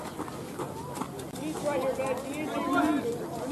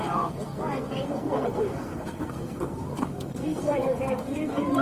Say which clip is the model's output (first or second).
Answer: second